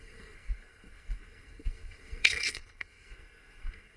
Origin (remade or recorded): remade